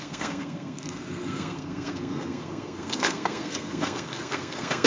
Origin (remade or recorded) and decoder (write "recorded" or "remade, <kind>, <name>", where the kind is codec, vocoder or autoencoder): remade, codec, SNAC